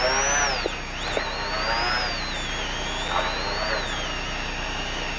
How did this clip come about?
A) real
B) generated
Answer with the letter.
A